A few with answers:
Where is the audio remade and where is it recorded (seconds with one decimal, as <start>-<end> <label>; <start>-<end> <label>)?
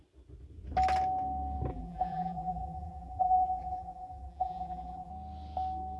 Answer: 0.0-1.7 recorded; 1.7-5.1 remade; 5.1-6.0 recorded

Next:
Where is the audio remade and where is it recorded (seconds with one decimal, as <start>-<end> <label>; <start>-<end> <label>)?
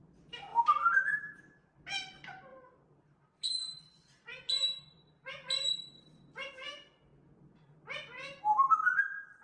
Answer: 0.0-0.5 recorded; 0.5-1.4 remade; 1.4-2.5 recorded; 2.5-6.5 remade; 6.5-9.4 recorded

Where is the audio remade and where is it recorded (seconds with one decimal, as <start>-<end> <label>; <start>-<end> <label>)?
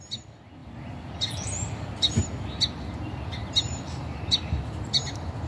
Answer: 0.0-0.6 recorded; 0.6-2.2 remade; 2.2-3.4 recorded; 3.4-5.1 remade; 5.1-5.5 recorded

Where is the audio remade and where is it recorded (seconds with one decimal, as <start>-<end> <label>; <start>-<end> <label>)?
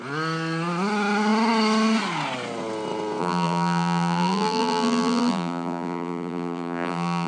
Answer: 0.0-3.2 recorded; 3.2-7.3 remade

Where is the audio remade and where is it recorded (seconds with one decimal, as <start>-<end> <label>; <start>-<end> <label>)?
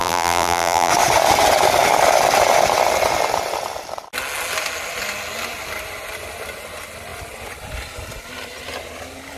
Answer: 0.0-0.9 remade; 0.9-9.4 recorded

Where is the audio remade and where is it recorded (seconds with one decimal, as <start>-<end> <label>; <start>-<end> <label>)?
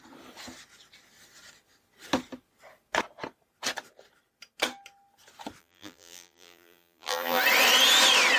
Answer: 0.0-5.6 recorded; 5.6-7.4 remade; 7.4-8.4 recorded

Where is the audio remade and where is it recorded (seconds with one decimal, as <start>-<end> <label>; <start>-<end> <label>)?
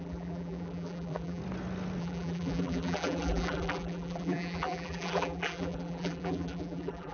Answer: 0.0-1.4 remade; 1.4-2.0 recorded; 2.0-7.1 remade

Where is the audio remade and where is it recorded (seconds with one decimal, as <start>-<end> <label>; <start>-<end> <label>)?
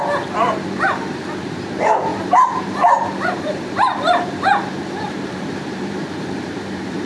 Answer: 0.0-7.1 remade